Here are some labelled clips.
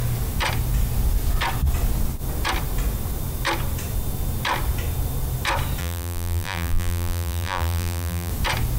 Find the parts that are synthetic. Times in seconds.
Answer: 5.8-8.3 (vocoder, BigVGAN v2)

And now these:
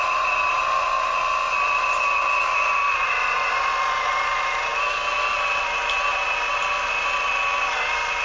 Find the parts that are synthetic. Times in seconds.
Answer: none

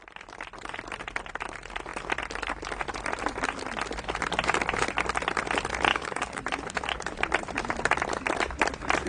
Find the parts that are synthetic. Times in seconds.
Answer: 5.9-6.4 (codec, DAC)

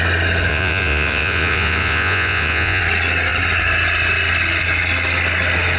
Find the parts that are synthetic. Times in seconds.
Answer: 0.5-2.8 (vocoder, Vocos)